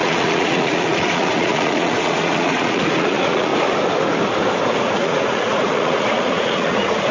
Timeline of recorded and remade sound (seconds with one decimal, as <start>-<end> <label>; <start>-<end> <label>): 0.0-3.5 remade; 3.5-4.8 recorded; 4.8-7.1 remade